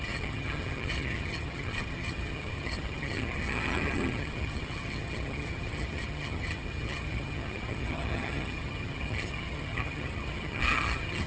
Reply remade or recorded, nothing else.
remade